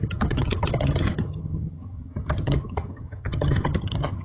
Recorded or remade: remade